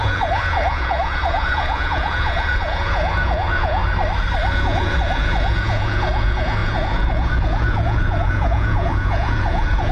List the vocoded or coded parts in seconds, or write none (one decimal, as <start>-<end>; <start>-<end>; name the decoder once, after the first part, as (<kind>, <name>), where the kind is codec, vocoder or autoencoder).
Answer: 0.0-3.8 (vocoder, Vocos); 4.5-9.9